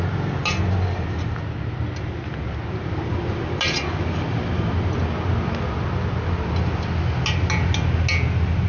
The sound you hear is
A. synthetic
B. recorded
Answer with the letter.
B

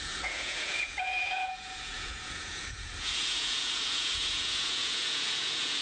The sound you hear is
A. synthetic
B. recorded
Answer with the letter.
A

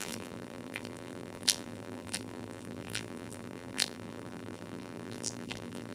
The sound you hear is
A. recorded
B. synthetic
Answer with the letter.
B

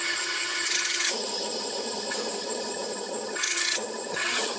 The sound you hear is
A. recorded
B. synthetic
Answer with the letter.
B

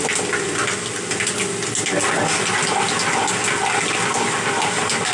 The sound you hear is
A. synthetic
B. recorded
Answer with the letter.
B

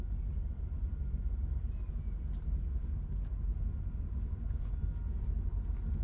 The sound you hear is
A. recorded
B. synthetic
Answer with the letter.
A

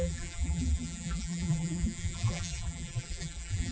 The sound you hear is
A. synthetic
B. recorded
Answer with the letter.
A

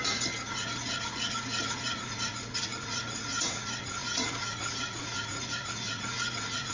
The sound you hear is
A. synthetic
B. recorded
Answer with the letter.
A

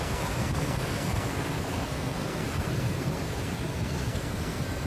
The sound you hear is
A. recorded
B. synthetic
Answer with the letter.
B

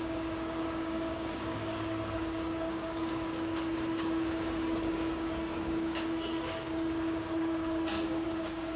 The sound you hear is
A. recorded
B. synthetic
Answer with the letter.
B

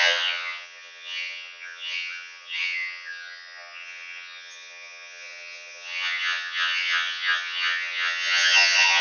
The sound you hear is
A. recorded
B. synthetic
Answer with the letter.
B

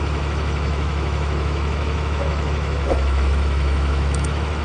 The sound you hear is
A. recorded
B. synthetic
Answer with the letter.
B